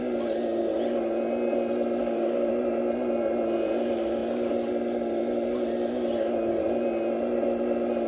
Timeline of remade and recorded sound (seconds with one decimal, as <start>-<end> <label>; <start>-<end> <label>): 0.0-2.0 recorded; 2.0-2.5 remade; 2.5-8.1 recorded